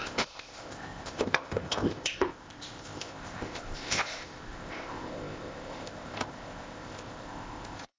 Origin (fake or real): fake